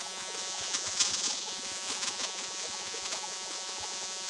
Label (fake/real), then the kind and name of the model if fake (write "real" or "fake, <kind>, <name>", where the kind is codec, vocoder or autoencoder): fake, vocoder, Vocos